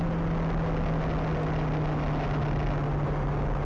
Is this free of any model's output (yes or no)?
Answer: yes